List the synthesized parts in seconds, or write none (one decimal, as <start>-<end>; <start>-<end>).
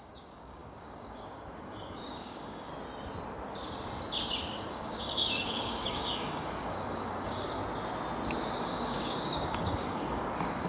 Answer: 0.0-2.7; 4.7-7.6; 8.6-10.7